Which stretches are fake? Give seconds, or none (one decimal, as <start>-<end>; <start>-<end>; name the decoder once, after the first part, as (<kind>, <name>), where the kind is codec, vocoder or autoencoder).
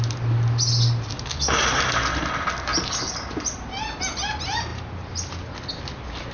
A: 2.7-4.0 (vocoder, BigVGAN v2); 4.7-5.5